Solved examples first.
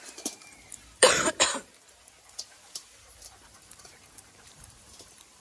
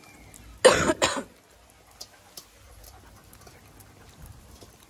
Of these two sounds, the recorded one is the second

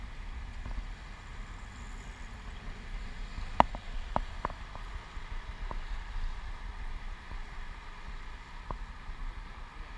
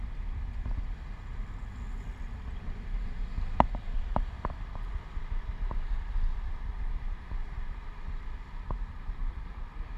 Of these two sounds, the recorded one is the first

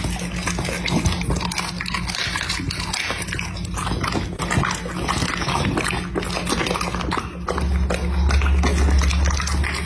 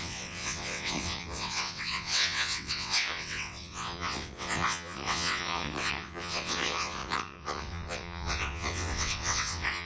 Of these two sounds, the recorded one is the first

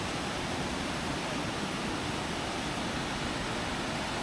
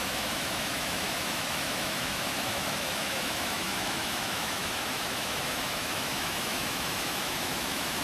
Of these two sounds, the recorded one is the first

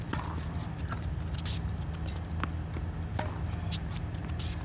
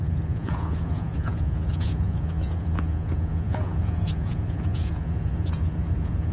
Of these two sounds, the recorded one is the first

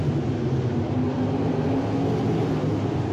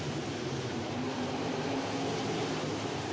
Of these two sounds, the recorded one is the first